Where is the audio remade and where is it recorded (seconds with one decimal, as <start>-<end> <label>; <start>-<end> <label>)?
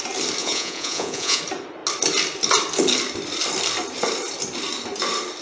0.0-0.4 recorded; 0.4-1.4 remade; 1.4-5.4 recorded